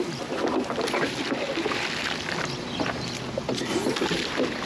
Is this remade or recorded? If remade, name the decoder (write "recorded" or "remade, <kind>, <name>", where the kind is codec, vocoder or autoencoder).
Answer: recorded